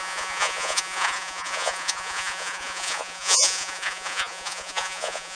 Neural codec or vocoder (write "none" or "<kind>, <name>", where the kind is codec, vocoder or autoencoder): vocoder, Vocos